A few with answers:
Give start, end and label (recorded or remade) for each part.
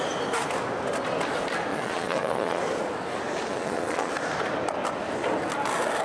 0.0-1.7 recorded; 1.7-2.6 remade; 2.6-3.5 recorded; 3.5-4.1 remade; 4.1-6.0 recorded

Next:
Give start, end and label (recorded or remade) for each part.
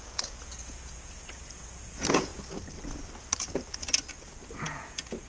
0.0-2.3 remade; 2.3-4.1 recorded; 4.1-5.3 remade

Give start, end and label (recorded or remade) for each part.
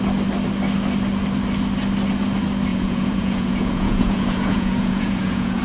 0.0-2.7 recorded; 2.7-5.6 remade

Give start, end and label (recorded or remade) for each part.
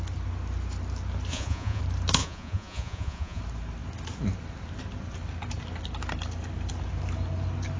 0.0-1.3 recorded; 1.3-1.8 remade; 1.8-2.2 recorded; 2.2-3.4 remade; 3.4-7.8 recorded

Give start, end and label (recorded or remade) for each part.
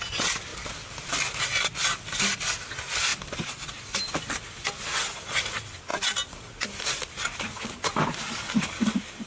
0.0-9.3 recorded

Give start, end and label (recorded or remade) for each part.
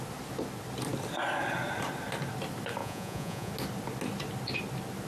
0.0-2.8 recorded; 2.8-3.5 remade; 3.5-5.1 recorded